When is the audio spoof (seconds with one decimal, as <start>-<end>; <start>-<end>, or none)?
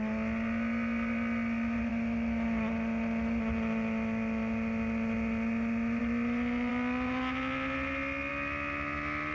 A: none